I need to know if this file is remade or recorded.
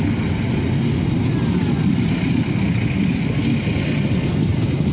recorded